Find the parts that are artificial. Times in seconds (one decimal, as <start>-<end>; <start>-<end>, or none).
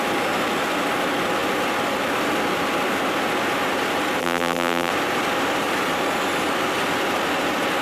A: 4.2-4.9